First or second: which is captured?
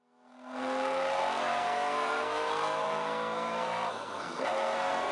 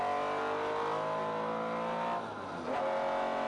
second